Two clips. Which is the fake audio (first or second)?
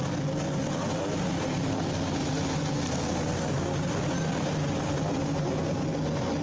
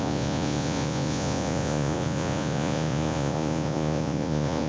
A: second